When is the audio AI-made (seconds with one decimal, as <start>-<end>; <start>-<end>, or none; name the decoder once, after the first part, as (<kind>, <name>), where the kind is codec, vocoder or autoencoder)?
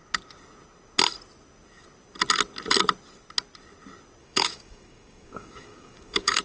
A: 4.2-6.4 (codec, DAC)